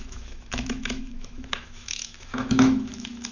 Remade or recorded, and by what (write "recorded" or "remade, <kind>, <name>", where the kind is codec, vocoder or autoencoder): remade, autoencoder, DAC-VAE